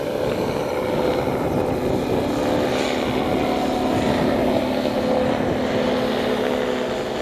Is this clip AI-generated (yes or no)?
no